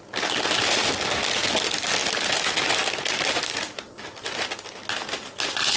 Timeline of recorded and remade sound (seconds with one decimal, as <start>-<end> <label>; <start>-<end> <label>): 0.0-5.8 recorded